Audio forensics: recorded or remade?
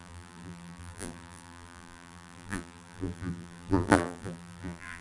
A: remade